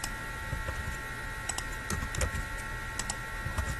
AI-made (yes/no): no